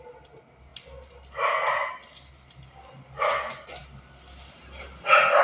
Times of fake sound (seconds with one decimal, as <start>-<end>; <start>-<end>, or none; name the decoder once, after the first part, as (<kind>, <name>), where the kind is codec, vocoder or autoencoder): none